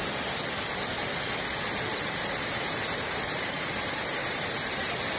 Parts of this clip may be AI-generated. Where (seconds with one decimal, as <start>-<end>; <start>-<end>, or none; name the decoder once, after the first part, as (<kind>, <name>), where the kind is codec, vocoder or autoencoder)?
1.9-4.8 (vocoder, BigVGAN v2)